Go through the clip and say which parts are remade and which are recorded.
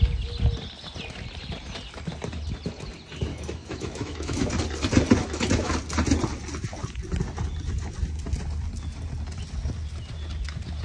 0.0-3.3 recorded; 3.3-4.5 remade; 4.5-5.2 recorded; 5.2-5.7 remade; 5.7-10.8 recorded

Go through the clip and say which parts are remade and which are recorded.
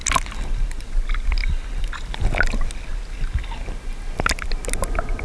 0.0-5.2 recorded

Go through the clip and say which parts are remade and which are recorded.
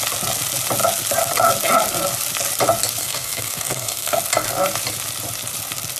0.0-3.0 recorded; 3.0-4.2 remade; 4.2-6.0 recorded